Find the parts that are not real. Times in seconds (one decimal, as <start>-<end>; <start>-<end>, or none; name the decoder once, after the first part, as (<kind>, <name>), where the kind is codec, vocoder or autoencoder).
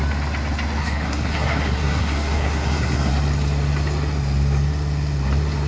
0.8-3.1 (codec, SNAC)